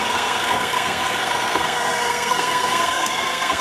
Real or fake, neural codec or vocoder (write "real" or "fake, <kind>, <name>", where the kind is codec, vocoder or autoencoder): fake, codec, SNAC